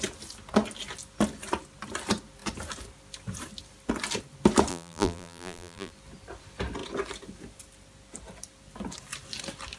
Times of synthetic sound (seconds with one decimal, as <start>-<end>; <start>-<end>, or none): 4.7-5.9